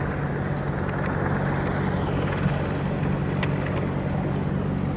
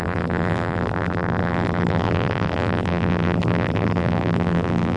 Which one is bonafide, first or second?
first